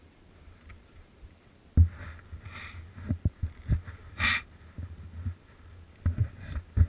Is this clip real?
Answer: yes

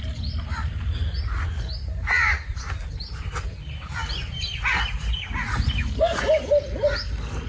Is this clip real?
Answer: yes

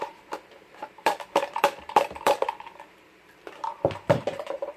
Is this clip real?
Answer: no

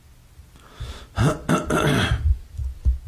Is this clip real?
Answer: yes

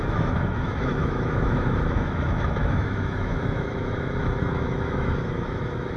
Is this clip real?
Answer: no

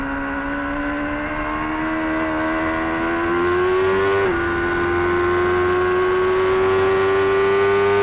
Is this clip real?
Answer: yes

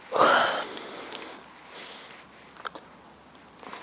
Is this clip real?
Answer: yes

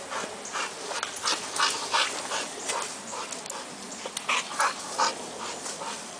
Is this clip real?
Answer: yes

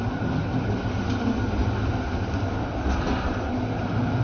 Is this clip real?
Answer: yes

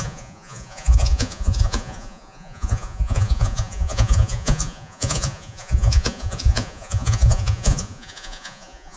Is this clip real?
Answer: no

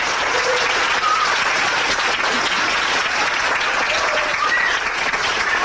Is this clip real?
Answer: no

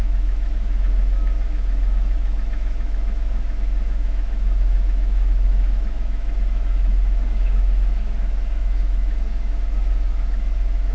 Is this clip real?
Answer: no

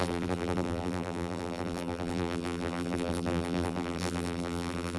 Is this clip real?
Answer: no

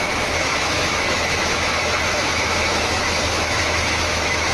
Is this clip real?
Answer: no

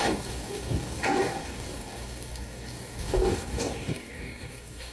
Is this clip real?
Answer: no